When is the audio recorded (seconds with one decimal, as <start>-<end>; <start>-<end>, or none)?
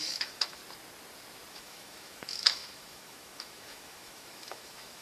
0.6-1.5